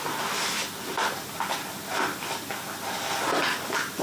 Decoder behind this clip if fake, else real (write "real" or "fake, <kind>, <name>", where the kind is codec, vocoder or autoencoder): real